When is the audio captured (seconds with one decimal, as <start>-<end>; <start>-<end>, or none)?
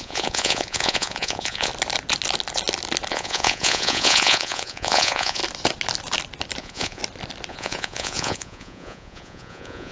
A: 1.7-3.1; 5.4-6.6; 7.0-7.5